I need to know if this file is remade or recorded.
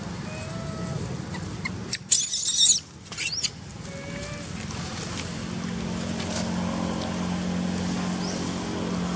recorded